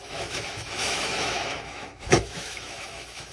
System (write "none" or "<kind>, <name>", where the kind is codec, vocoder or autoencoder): autoencoder, DAC-VAE